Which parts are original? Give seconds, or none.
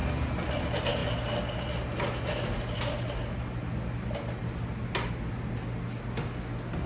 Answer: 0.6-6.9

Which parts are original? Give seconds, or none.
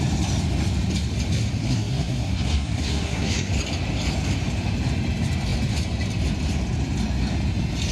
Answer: 0.0-1.6; 3.5-7.9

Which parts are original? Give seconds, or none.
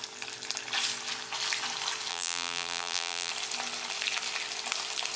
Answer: 0.0-2.1; 3.3-5.2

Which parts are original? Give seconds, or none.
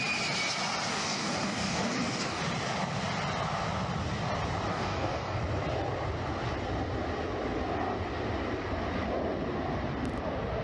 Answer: 0.0-0.9; 2.4-4.7; 5.4-10.6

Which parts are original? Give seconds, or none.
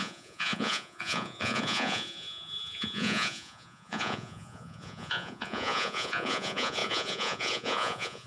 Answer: none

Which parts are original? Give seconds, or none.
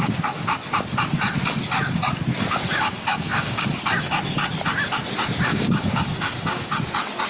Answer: 0.0-3.1; 3.6-5.5; 6.8-7.3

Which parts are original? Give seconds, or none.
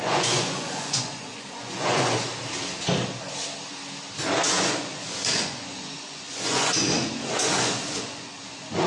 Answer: 2.3-4.3